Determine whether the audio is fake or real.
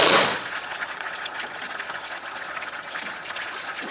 fake